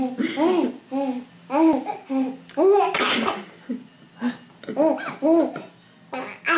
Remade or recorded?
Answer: recorded